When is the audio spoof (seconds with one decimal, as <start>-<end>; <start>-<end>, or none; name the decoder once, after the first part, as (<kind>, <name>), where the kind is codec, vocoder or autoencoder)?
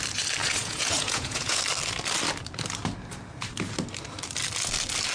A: 0.4-1.6 (vocoder, Vocos)